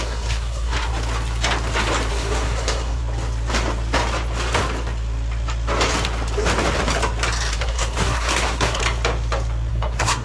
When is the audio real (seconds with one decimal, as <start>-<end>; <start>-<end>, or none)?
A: 0.9-2.1; 3.0-7.5; 8.8-9.7